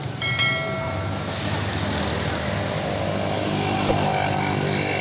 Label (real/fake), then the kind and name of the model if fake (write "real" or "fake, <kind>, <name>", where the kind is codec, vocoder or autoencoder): real